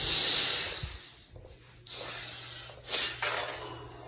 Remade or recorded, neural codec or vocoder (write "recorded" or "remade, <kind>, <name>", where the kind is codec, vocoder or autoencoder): recorded